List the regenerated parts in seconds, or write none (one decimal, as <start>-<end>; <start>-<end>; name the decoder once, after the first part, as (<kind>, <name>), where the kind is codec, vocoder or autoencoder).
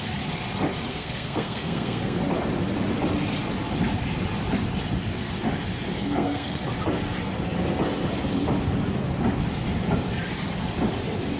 0.9-2.2 (codec, SNAC); 6.0-6.6